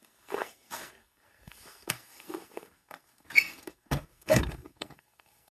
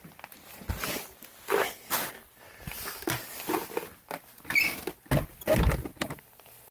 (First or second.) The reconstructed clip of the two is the first